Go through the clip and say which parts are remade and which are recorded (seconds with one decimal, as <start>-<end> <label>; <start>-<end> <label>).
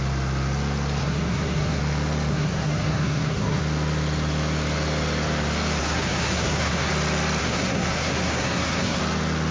0.0-1.0 recorded; 1.0-1.8 remade; 1.8-2.3 recorded; 2.3-3.6 remade; 3.6-5.8 recorded; 5.8-6.9 remade; 6.9-7.4 recorded; 7.4-9.0 remade; 9.0-9.5 recorded